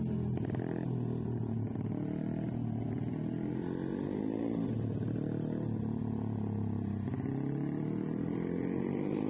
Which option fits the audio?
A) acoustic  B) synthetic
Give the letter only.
A